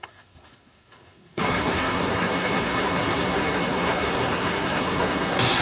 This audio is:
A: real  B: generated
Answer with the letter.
B